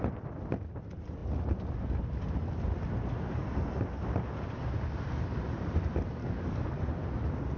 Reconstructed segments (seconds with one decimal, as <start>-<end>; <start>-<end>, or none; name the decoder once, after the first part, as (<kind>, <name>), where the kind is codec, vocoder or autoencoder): 6.2-6.8 (codec, DAC)